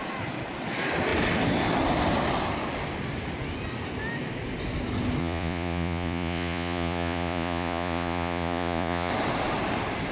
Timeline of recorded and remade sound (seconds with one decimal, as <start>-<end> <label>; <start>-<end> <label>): 0.0-5.2 recorded; 5.2-9.1 remade; 9.1-10.1 recorded